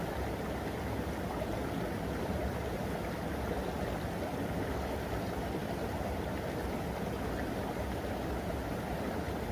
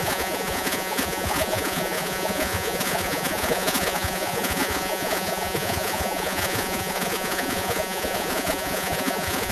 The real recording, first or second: first